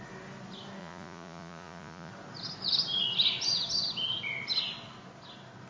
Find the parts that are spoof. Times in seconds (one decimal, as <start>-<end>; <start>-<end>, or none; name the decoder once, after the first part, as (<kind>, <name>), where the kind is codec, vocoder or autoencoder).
0.8-2.1 (vocoder, Vocos)